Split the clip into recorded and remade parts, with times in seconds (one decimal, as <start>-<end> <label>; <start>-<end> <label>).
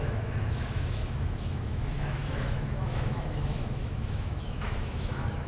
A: 0.0-5.5 remade